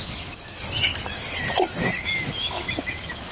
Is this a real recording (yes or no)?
no